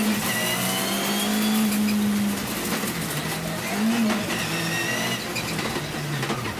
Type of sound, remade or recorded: recorded